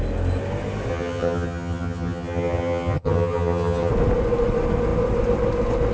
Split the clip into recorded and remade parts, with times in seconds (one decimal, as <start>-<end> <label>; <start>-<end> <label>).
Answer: 0.0-0.9 recorded; 0.9-3.9 remade; 3.9-5.9 recorded